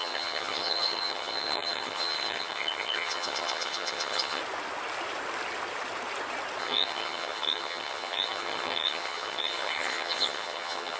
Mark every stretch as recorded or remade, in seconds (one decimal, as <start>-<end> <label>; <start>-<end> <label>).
0.0-4.4 remade; 4.4-6.6 recorded; 6.6-11.0 remade